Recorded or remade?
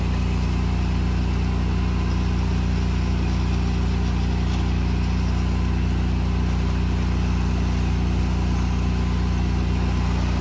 recorded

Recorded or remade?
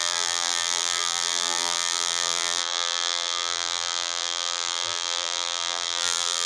remade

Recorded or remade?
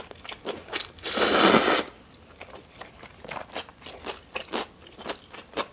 recorded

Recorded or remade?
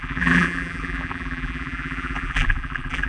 remade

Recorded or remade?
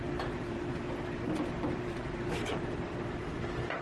remade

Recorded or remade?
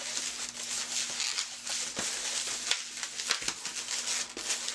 recorded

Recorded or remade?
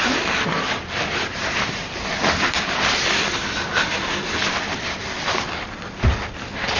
remade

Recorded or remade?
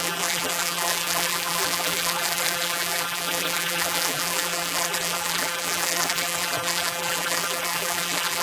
remade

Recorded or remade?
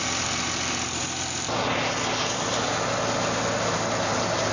remade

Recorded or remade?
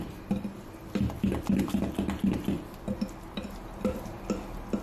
recorded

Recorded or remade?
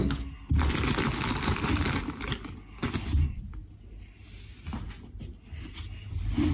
recorded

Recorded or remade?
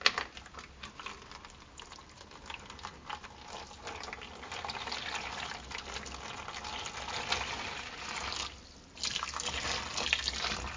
recorded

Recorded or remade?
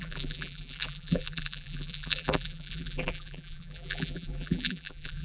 remade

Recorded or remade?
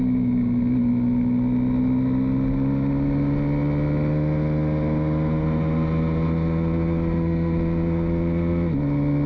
recorded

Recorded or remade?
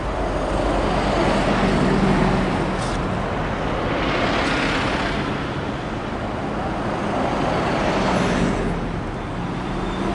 recorded